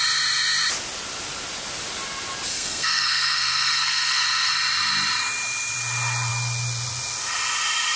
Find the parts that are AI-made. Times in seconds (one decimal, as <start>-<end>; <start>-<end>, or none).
2.5-4.5